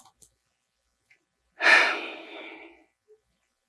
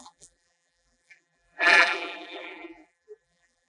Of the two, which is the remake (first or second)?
second